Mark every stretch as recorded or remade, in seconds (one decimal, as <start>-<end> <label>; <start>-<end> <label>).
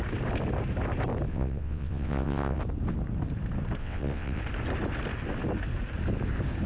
0.0-1.3 recorded; 1.3-2.6 remade; 2.6-3.8 recorded; 3.8-4.4 remade; 4.4-6.7 recorded